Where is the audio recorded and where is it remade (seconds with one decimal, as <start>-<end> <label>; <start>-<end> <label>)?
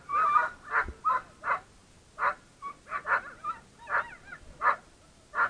0.0-1.0 remade; 1.0-5.5 recorded